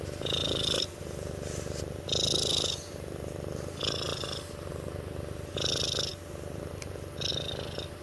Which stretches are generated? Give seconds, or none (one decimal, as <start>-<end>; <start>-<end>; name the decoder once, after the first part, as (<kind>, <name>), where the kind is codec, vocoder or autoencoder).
0.4-1.0 (vocoder, BigVGAN v2); 4.1-4.7; 7.3-8.0